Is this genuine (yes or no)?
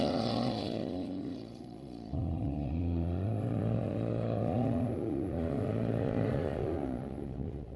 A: no